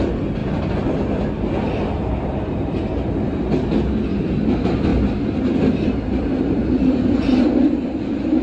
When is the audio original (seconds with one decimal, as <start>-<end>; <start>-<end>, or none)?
0.0-8.4